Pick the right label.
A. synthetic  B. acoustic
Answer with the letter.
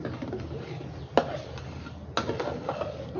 B